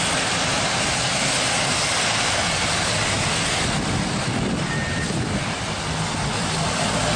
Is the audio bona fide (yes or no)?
no